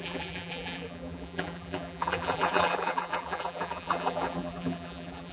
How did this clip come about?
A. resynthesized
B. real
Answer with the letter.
A